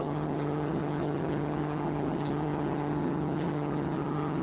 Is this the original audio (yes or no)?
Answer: no